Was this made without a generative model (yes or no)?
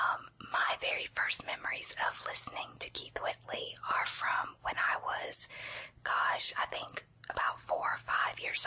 yes